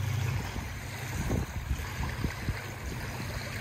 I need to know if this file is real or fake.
real